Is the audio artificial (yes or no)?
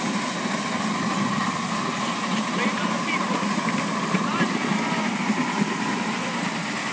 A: no